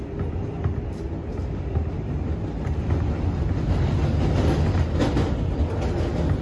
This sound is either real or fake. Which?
real